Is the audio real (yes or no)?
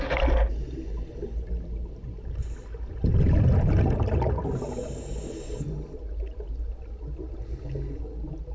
yes